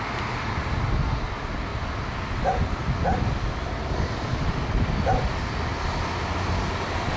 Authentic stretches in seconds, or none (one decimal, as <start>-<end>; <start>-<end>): 0.0-7.2